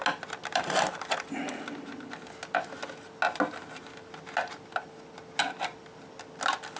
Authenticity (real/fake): real